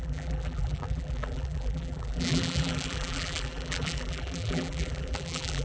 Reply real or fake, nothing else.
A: fake